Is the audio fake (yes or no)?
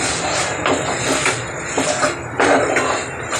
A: no